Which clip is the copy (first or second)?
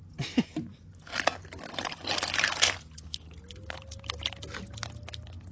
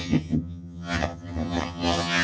second